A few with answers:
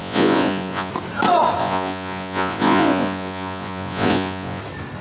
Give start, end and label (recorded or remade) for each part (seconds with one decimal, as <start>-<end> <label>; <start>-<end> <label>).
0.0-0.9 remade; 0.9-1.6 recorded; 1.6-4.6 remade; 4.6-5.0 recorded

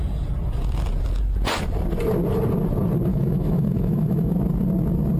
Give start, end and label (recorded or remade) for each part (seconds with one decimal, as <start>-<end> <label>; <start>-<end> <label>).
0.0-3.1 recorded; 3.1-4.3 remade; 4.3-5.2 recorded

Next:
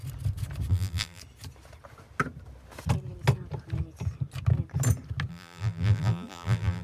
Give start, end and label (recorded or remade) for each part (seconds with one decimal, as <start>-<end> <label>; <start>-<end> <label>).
0.0-0.7 recorded; 0.7-1.2 remade; 1.2-5.3 recorded; 5.3-6.8 remade